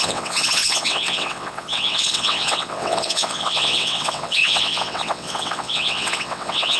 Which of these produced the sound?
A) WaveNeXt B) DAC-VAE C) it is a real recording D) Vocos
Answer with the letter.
A